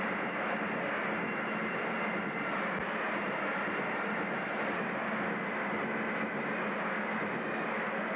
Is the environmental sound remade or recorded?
recorded